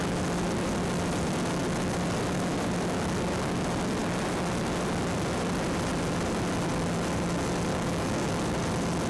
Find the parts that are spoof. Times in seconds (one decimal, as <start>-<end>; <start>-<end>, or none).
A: 7.7-8.3